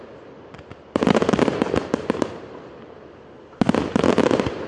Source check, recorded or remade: recorded